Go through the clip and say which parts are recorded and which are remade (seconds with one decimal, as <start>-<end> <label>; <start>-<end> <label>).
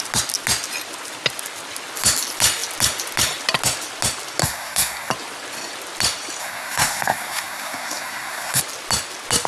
0.0-4.4 recorded; 4.4-5.1 remade; 5.1-6.4 recorded; 6.4-8.6 remade; 8.6-9.5 recorded